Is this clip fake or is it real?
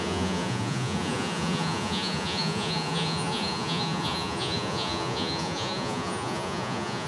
fake